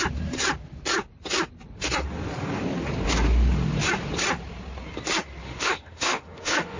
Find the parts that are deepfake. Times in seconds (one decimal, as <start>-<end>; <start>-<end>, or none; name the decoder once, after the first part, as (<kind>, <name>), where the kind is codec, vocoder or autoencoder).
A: 5.4-6.8 (autoencoder, DAC-VAE)